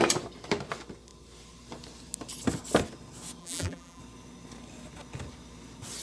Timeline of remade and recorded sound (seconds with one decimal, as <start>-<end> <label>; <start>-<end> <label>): 0.0-3.4 recorded; 3.4-4.0 remade; 4.0-6.0 recorded